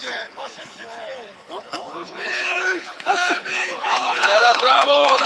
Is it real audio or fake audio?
fake